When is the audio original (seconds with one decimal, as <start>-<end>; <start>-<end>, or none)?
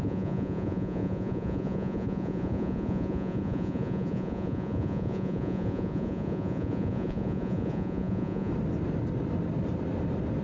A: 8.5-10.4